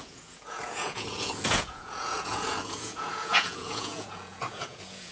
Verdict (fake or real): fake